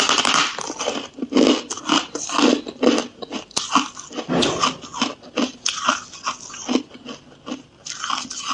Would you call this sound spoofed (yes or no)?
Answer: no